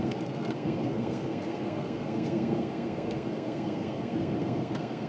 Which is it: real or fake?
fake